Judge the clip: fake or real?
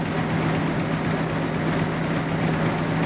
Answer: real